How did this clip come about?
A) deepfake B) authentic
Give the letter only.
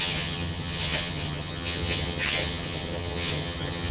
A